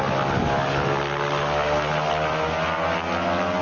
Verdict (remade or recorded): recorded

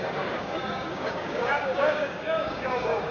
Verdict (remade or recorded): remade